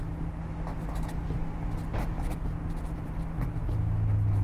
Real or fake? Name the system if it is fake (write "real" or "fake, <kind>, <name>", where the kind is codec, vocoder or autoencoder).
real